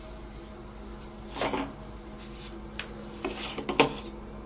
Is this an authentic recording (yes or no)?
yes